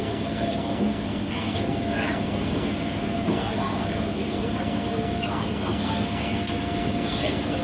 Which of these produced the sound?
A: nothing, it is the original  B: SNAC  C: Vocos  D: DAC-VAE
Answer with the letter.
B